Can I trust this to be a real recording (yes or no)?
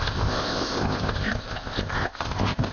no